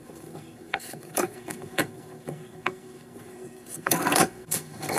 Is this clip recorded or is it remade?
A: remade